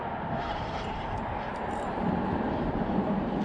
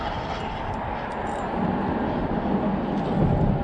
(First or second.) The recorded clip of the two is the second